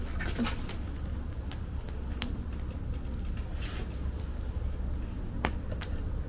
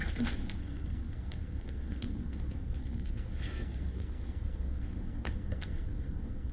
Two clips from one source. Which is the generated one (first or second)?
second